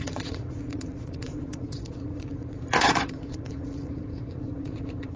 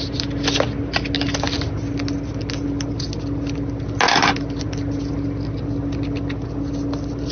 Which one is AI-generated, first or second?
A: first